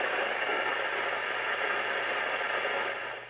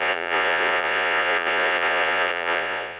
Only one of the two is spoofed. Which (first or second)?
second